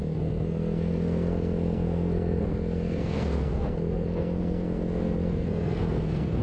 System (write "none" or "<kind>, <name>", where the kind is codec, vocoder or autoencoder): codec, SNAC